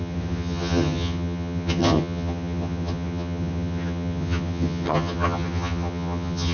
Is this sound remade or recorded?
remade